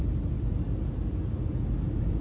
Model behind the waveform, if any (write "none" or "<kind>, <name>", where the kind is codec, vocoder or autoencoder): none